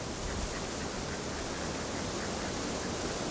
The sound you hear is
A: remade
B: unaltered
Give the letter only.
B